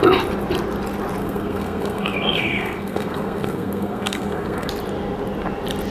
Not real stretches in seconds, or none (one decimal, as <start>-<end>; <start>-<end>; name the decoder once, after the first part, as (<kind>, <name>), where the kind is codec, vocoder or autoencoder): 1.2-4.7 (codec, SNAC)

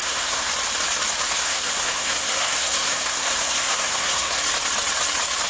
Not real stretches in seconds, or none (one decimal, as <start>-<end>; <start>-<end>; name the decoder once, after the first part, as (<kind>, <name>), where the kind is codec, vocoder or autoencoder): 0.0-0.5 (codec, SNAC); 1.4-4.4

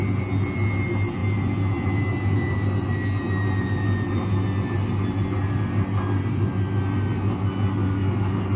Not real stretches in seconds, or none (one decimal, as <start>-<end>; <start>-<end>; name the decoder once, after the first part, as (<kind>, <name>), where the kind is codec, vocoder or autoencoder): none

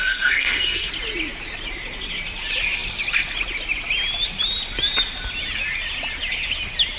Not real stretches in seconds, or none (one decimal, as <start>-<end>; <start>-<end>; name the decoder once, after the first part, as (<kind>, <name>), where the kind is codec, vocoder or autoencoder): 0.0-0.9 (codec, SNAC)

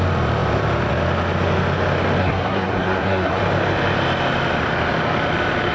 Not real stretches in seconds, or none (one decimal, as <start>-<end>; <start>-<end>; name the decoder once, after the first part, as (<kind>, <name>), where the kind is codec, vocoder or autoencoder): 2.2-3.4 (codec, SNAC)

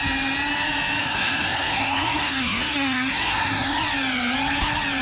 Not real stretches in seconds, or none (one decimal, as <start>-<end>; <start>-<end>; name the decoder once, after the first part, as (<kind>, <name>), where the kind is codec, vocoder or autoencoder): 1.0-3.8 (codec, SNAC)

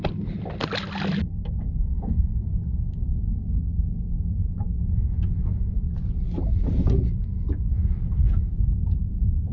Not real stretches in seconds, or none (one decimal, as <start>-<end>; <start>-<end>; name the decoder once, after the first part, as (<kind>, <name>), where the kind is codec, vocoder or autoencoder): 1.2-2.4 (codec, SNAC); 3.3-4.8